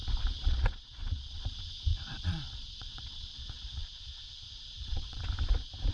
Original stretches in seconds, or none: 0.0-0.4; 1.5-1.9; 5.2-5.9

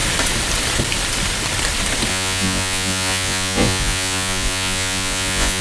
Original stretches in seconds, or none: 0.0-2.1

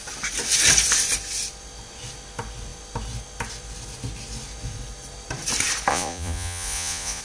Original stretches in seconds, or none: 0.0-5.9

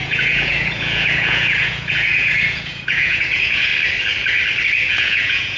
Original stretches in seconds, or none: 3.7-4.9